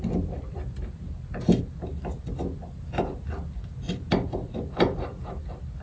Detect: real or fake real